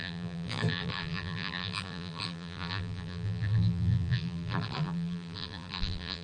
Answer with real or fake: fake